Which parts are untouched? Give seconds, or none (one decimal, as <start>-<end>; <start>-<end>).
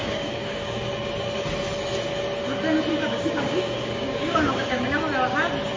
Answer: 0.9-2.9; 5.0-5.8